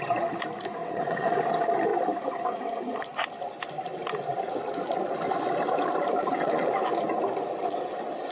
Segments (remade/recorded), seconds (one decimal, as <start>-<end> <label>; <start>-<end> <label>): 0.0-0.8 recorded; 0.8-1.3 remade; 1.3-6.2 recorded; 6.2-6.7 remade; 6.7-8.3 recorded